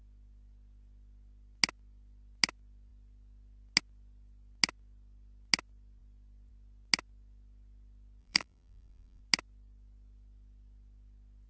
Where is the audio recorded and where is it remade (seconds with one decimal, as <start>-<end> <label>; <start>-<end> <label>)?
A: 0.0-8.2 recorded; 8.2-9.2 remade; 9.2-11.5 recorded